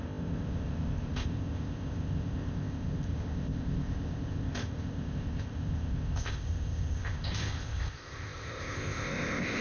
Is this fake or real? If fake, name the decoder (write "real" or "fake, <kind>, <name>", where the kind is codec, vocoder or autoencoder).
fake, codec, ZipCodec